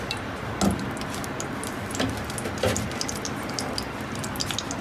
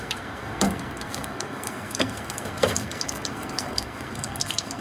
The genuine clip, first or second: first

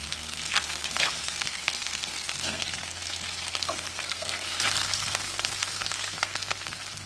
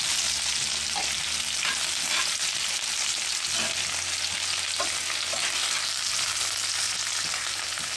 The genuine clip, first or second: second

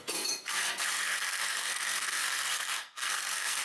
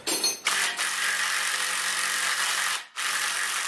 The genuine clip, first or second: second